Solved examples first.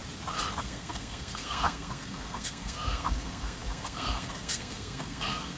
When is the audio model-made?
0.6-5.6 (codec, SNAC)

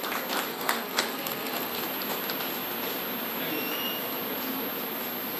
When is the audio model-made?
0.5-1.8 (codec, SNAC)